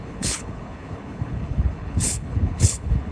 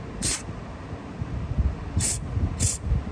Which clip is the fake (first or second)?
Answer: first